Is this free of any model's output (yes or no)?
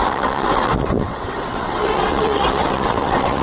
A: no